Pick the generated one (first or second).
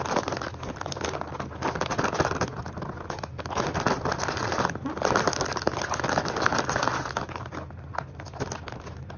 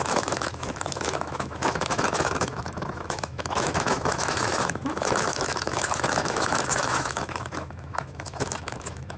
second